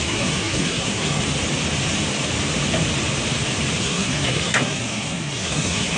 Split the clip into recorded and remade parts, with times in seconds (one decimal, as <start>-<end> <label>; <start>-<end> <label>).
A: 0.0-1.2 remade; 1.2-3.8 recorded; 3.8-6.0 remade

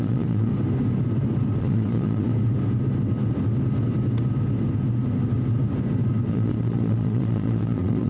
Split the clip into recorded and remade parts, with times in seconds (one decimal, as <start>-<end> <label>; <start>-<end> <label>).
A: 0.0-0.5 remade; 0.5-1.6 recorded; 1.6-2.3 remade; 2.3-6.3 recorded; 6.3-8.1 remade

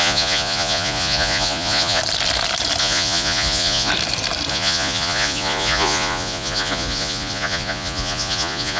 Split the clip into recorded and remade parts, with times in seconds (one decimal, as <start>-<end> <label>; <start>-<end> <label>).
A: 0.0-2.0 remade; 2.0-2.8 recorded; 2.8-3.9 remade; 3.9-4.5 recorded; 4.5-8.8 remade

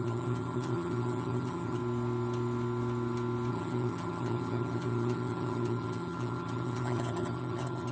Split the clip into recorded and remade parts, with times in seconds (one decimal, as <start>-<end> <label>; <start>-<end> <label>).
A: 0.0-1.8 remade; 1.8-3.5 recorded; 3.5-7.9 remade

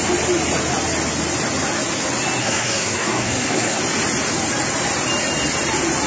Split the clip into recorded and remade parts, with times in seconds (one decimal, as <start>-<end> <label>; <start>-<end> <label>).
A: 0.0-2.4 recorded; 2.4-3.8 remade; 3.8-6.1 recorded

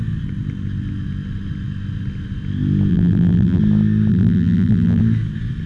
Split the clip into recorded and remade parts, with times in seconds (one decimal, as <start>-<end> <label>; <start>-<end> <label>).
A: 0.0-2.9 recorded; 2.9-3.6 remade; 3.6-4.1 recorded; 4.1-5.0 remade; 5.0-5.7 recorded